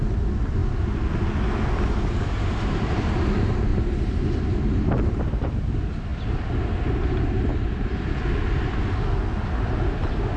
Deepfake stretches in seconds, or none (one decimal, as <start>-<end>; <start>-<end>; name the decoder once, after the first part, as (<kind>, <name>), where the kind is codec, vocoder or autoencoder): 3.7-4.6 (vocoder, BigVGAN v2)